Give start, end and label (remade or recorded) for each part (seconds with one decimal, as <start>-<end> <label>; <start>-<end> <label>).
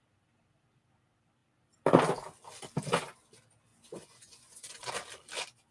0.0-3.7 recorded; 3.7-4.8 remade; 4.8-5.7 recorded